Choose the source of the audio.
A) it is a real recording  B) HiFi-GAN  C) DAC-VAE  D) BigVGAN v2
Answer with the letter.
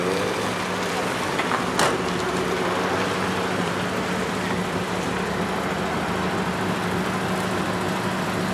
A